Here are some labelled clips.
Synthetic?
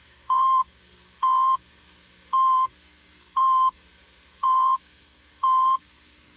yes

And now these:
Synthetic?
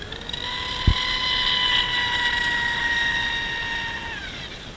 no